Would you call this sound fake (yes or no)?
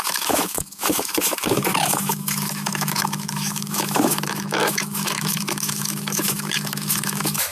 yes